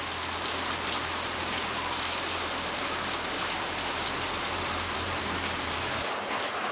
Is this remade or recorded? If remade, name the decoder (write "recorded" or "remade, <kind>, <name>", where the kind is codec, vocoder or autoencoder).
recorded